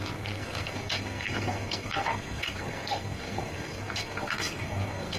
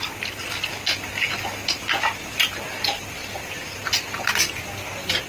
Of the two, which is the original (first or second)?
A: second